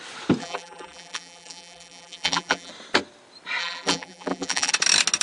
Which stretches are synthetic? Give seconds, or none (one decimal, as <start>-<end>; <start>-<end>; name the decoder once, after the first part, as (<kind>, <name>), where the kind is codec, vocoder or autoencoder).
0.4-2.7 (vocoder, BigVGAN v2); 3.6-4.7